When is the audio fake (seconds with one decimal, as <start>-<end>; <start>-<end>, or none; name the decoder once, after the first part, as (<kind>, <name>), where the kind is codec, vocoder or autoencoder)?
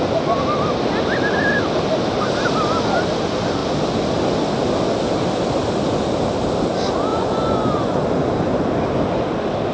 7.1-8.0 (vocoder, Vocos)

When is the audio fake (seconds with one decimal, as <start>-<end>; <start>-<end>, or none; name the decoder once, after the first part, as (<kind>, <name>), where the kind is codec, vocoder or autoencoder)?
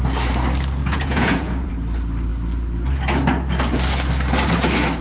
0.8-1.7 (vocoder, Vocos)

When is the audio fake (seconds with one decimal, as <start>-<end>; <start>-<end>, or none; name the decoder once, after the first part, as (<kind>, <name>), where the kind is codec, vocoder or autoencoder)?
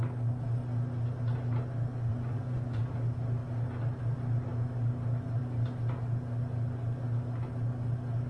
2.1-2.8 (vocoder, Vocos)